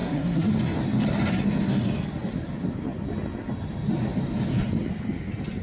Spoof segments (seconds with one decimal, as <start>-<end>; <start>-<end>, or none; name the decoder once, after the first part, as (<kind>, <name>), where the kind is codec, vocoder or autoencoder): 0.0-0.5 (codec, SNAC)